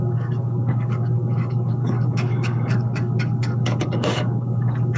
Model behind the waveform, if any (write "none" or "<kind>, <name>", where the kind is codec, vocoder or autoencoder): codec, DAC